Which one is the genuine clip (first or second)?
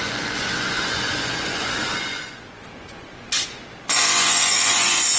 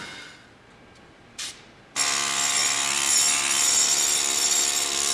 second